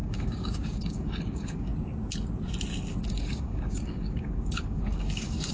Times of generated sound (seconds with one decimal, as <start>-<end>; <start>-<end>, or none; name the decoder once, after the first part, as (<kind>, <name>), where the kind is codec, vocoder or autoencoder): 0.0-1.7 (codec, DAC); 3.1-5.5